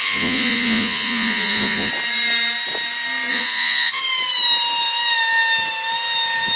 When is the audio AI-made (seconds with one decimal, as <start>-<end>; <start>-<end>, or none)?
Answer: 0.0-1.9; 3.3-4.0